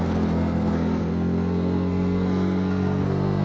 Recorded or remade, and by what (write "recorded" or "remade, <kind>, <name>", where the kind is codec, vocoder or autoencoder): remade, codec, SNAC